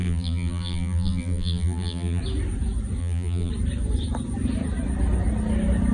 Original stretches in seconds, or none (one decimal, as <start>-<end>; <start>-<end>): 2.2-3.0; 3.5-5.9